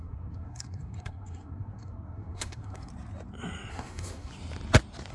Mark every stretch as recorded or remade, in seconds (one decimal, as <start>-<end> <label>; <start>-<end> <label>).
0.0-2.9 remade; 2.9-3.7 recorded; 3.7-4.3 remade; 4.3-5.1 recorded